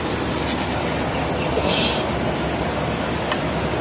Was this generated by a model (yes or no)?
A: no